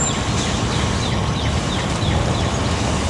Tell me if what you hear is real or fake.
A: real